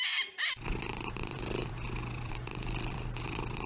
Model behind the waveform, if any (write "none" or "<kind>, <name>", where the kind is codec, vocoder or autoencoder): vocoder, BigVGAN v2